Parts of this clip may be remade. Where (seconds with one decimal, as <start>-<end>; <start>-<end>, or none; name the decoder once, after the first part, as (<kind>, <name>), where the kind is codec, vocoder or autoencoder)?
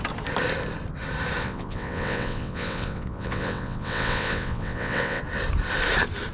1.4-5.2 (vocoder, WaveNeXt)